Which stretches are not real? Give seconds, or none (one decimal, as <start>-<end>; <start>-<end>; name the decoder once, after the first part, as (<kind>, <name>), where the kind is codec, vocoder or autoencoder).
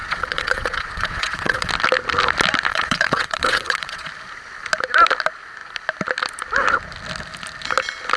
0.0-1.7 (vocoder, WaveNeXt); 2.7-4.1